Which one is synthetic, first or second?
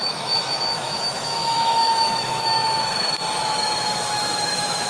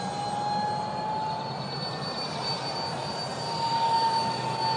first